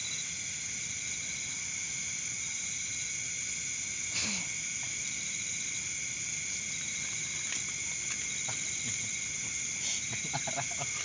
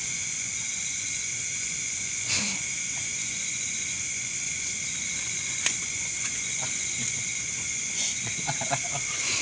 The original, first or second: first